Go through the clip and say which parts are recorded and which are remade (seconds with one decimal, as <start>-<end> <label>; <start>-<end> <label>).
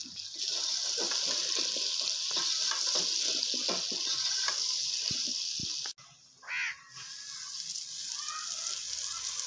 0.0-9.5 recorded